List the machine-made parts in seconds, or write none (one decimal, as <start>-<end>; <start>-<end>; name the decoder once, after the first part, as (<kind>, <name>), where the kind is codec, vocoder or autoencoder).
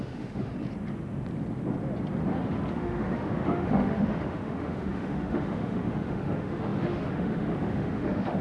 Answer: 0.0-0.5 (autoencoder, DAC-VAE); 2.7-8.4